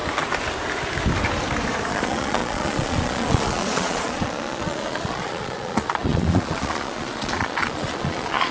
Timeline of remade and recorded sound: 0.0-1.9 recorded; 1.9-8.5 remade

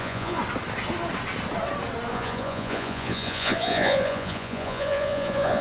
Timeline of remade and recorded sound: 0.0-0.4 remade; 0.4-2.1 recorded; 2.1-5.6 remade